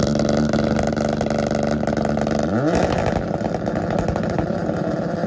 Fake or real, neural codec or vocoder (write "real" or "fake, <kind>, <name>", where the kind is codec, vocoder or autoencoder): real